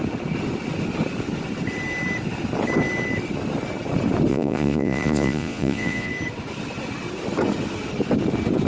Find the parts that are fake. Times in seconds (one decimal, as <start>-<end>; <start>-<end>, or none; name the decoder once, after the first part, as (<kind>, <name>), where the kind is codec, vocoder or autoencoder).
4.3-6.1 (vocoder, Vocos)

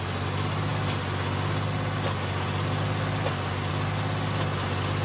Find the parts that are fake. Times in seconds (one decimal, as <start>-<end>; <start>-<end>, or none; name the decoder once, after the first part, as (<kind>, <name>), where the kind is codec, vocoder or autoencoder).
none

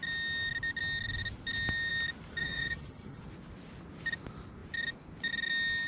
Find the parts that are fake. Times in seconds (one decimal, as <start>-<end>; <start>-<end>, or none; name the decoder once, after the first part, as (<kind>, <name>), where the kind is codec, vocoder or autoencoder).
2.4-3.2 (vocoder, HiFi-GAN)

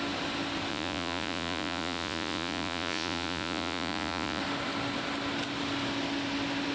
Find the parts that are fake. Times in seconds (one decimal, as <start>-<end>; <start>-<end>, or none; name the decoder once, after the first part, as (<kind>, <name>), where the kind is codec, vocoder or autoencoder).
0.7-4.4 (vocoder, Vocos)

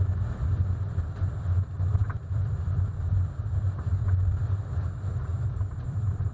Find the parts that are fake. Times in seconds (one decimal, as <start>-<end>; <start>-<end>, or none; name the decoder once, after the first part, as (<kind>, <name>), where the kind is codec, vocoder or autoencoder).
0.0-6.3 (vocoder, BigVGAN v2)

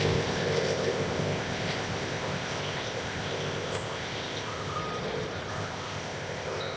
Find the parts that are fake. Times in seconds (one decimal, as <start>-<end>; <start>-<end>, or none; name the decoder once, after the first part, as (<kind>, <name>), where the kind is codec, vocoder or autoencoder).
0.0-4.8 (codec, ZipCodec); 5.5-6.8

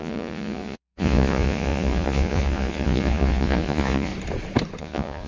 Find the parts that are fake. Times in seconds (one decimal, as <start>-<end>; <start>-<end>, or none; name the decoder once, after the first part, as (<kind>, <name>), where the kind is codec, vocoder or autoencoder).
0.0-4.1 (vocoder, Vocos); 4.8-5.3

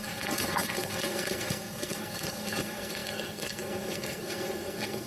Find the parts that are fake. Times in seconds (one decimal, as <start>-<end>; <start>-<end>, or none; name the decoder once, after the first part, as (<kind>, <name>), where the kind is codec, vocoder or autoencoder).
0.0-5.1 (codec, SNAC)